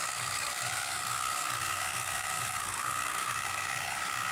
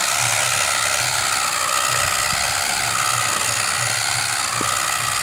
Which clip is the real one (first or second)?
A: second